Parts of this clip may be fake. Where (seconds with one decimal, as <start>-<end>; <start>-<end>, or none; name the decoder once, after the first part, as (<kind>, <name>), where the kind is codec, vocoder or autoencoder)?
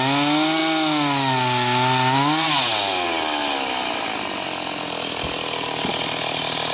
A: 3.4-3.9 (vocoder, BigVGAN v2)